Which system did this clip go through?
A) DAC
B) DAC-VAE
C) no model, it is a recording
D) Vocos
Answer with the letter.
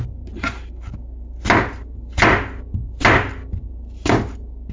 C